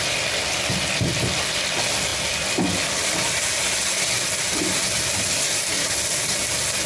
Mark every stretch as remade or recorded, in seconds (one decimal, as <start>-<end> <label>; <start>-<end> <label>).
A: 0.0-6.9 recorded